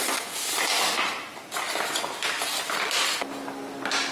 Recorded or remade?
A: recorded